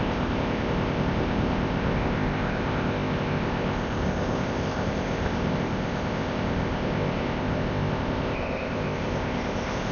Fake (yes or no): yes